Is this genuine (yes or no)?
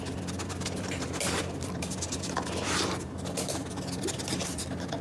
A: no